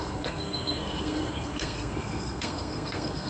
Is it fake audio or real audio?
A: fake